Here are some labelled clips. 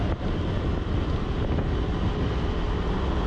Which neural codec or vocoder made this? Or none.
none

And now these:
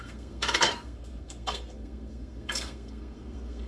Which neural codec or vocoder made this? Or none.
codec, SNAC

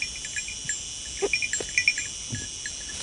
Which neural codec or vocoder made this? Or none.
none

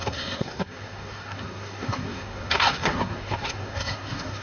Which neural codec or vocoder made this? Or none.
codec, SNAC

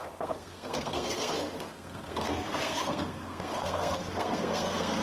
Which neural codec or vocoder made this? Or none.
codec, SNAC